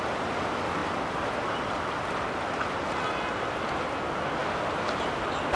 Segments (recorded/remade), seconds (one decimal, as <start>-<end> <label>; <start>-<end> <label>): 0.0-5.6 recorded